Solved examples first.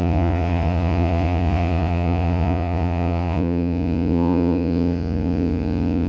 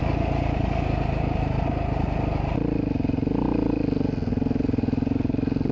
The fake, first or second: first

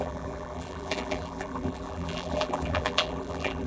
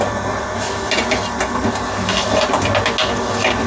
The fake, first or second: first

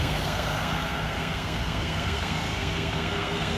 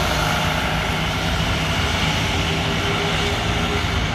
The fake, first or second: first